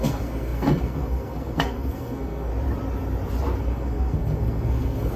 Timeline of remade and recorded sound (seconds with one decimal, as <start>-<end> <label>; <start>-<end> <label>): 0.0-2.5 remade; 2.5-3.6 recorded; 3.6-5.2 remade